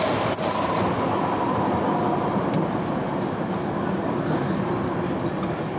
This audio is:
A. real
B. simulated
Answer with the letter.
A